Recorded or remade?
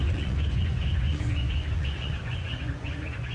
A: remade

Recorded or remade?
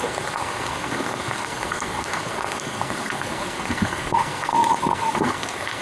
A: remade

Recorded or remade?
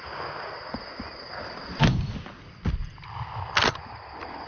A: recorded